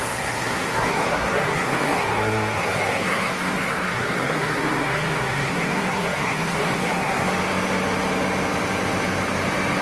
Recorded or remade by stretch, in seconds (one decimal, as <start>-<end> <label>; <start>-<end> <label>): 0.0-7.3 remade; 7.3-9.8 recorded